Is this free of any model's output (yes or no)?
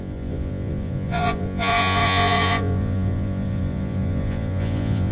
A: no